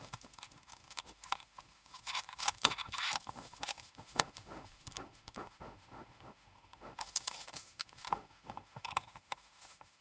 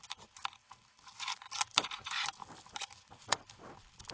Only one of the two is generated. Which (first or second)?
first